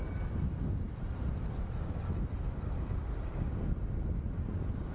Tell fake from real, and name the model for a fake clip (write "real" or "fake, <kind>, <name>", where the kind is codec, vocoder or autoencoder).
real